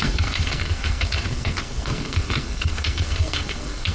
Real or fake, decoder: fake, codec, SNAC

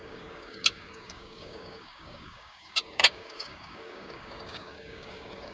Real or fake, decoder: fake, codec, DAC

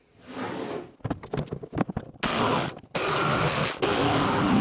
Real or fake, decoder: real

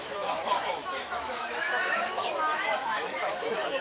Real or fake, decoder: fake, autoencoder, DAC-VAE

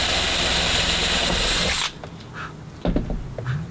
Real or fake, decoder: real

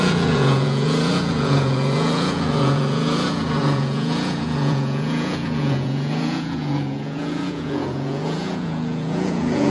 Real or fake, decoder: fake, vocoder, Vocos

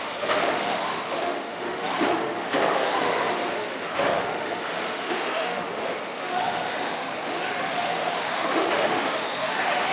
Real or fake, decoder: fake, autoencoder, DAC-VAE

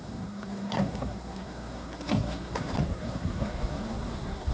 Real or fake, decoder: fake, codec, SNAC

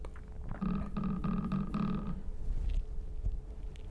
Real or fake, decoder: real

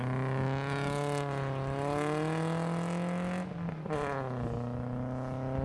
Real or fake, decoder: real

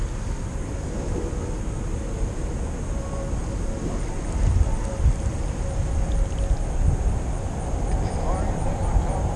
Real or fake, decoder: real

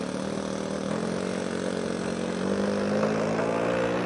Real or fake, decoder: real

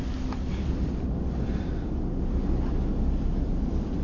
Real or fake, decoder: real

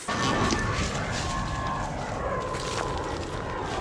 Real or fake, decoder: real